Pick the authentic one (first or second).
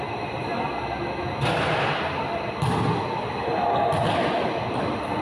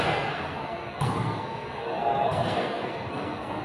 first